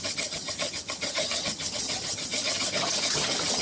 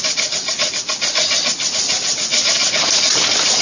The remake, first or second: first